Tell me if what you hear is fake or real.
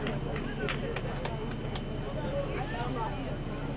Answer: real